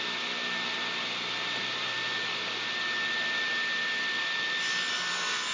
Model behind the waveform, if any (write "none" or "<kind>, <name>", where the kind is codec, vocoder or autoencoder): none